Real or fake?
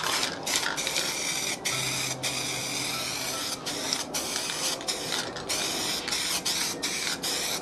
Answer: real